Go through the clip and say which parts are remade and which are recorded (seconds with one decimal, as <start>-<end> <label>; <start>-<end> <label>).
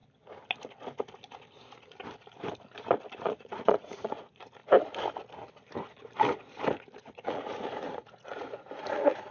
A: 0.0-3.2 recorded; 3.2-4.6 remade; 4.6-7.0 recorded; 7.0-9.3 remade